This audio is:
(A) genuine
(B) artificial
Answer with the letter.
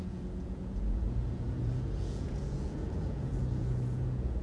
B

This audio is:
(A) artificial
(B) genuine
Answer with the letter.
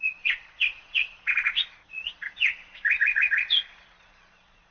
A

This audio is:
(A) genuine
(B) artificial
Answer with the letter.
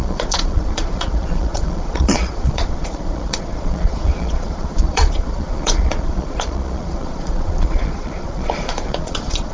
B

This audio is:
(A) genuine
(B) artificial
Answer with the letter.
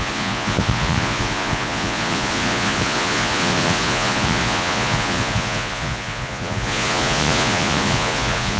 B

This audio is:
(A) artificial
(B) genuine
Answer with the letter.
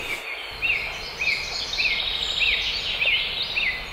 B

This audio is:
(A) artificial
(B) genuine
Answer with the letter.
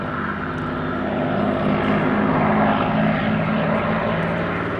B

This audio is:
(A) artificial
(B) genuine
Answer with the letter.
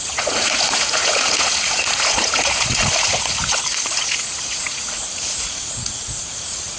A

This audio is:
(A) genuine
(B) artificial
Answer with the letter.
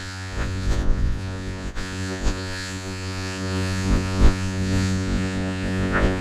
B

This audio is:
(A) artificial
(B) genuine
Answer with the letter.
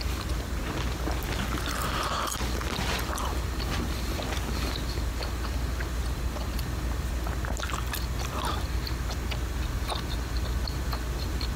B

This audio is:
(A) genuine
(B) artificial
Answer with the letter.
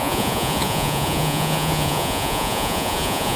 B